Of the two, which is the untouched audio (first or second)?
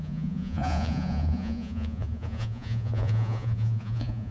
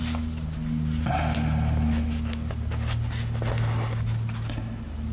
second